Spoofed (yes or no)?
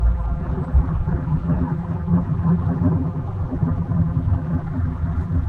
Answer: yes